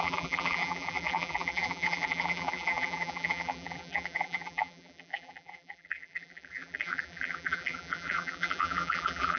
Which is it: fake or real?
fake